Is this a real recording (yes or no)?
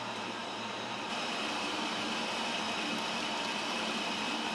no